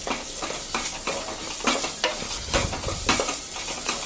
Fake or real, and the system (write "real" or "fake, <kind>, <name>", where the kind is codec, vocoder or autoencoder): real